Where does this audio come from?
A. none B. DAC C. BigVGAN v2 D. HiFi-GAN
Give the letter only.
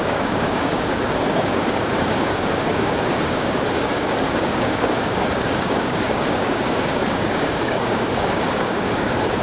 B